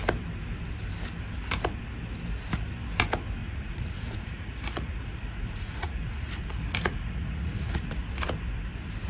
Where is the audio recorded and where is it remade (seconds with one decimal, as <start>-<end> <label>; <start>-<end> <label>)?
0.0-3.4 recorded; 3.4-7.8 remade; 7.8-9.1 recorded